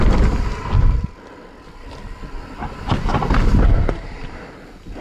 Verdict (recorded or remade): recorded